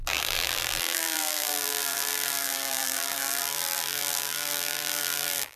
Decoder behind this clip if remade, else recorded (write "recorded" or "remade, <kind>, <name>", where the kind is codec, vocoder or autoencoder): remade, vocoder, BigVGAN v2